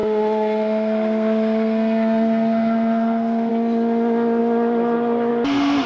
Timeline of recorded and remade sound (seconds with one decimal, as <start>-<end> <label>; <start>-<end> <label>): 0.0-3.5 remade; 3.5-5.9 recorded